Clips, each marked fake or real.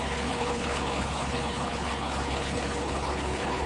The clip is fake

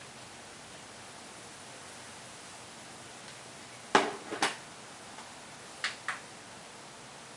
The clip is real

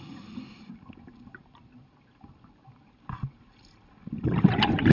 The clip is real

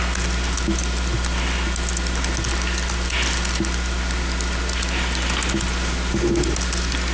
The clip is real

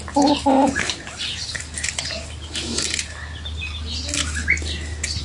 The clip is real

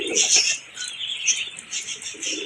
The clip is real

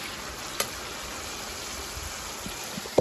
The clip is real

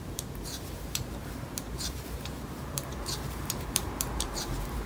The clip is fake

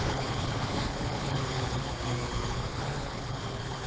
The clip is fake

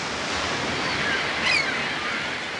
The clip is real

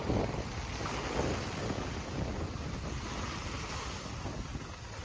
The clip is real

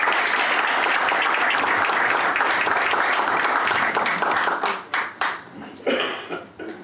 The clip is fake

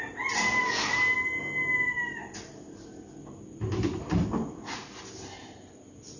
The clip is real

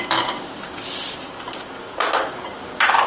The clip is real